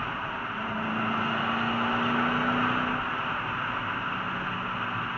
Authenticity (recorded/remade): recorded